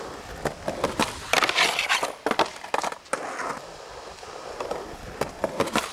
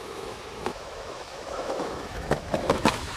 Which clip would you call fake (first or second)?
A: second